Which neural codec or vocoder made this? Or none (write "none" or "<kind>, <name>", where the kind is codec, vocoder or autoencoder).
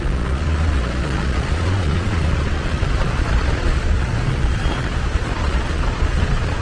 vocoder, Vocos